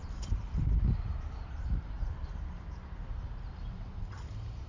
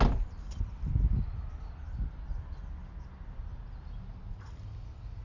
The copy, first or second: first